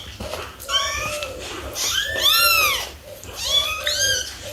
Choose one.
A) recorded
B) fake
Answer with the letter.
A